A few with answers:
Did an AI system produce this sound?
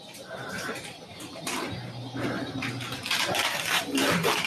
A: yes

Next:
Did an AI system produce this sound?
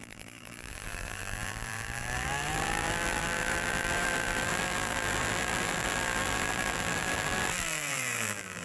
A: yes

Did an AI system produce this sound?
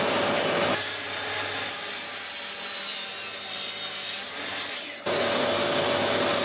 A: no